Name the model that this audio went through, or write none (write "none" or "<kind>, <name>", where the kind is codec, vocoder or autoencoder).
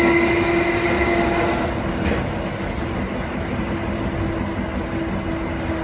none